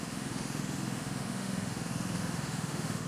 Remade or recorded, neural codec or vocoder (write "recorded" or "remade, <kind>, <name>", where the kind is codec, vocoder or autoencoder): remade, autoencoder, DAC-VAE